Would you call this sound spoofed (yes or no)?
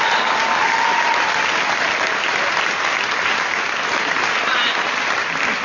no